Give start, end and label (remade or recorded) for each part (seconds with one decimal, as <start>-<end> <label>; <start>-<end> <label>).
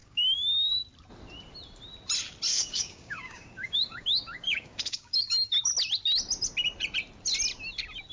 0.0-0.8 remade; 0.8-2.5 recorded; 2.5-5.7 remade; 5.7-8.1 recorded